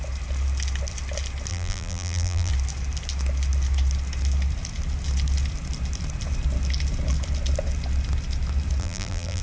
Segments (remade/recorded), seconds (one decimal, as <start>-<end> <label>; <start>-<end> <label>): 0.0-1.5 recorded; 1.5-2.5 remade; 2.5-8.8 recorded; 8.8-9.4 remade